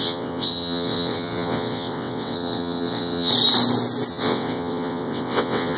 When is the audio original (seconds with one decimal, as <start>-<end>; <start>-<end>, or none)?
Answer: 3.3-4.1